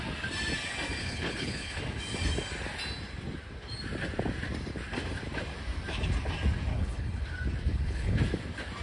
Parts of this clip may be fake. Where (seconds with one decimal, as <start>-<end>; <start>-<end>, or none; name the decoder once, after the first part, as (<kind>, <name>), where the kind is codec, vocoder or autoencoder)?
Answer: 1.0-1.8 (codec, HILCodec); 6.7-7.2; 7.7-8.2